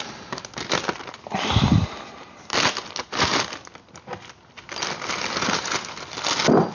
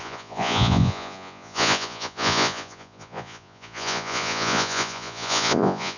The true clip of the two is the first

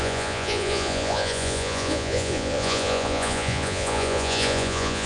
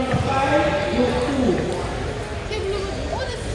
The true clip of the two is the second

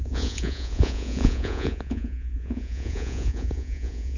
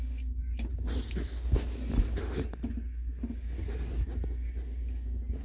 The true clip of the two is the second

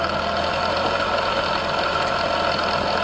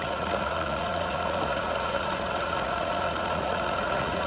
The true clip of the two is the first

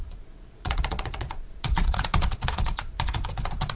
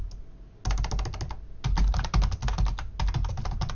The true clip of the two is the second